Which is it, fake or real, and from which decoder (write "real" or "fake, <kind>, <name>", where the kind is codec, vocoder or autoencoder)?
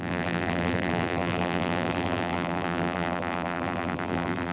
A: fake, vocoder, BigVGAN v2